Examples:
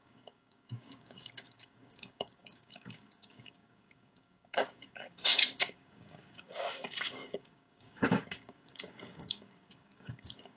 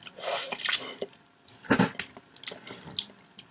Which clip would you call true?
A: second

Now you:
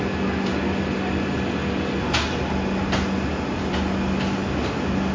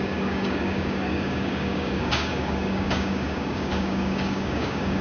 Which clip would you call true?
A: first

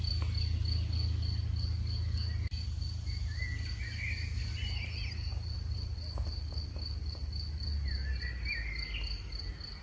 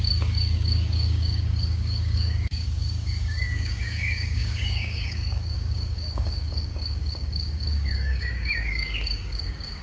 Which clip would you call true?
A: first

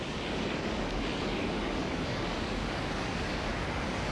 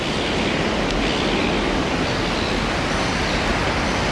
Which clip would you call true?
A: second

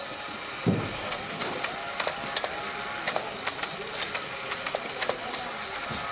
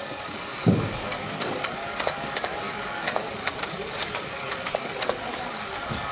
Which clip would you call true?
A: first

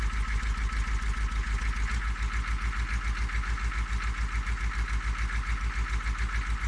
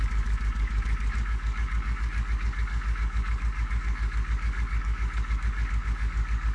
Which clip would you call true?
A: first